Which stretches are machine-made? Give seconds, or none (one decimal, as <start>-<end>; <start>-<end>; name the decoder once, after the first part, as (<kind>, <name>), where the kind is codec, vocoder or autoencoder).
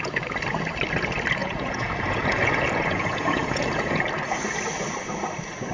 1.4-4.0 (vocoder, Vocos)